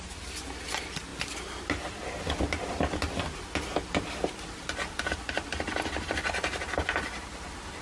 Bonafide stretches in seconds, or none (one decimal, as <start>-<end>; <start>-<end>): 0.0-7.8